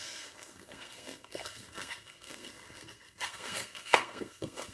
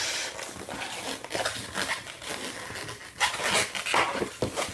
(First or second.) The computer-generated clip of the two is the first